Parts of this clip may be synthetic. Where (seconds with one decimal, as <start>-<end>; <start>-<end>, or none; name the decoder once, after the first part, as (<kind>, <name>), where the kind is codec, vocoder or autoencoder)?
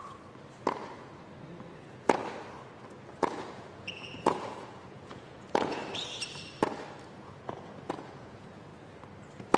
1.8-2.2 (vocoder, Vocos); 3.2-5.8; 7.1-8.7